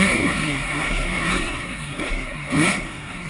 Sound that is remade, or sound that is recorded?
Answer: remade